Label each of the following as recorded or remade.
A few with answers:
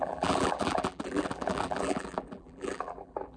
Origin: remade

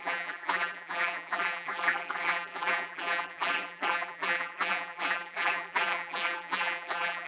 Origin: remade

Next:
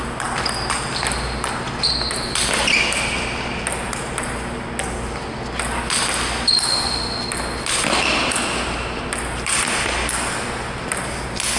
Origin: recorded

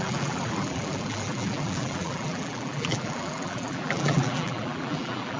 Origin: remade